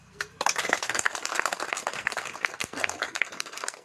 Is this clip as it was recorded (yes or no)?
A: no